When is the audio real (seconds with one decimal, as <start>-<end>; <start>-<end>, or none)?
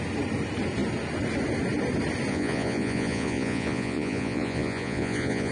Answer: 0.0-2.3